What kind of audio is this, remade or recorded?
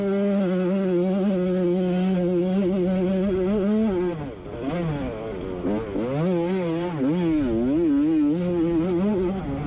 recorded